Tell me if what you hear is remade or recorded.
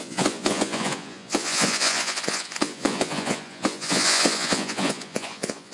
remade